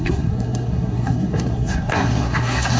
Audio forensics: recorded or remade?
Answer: remade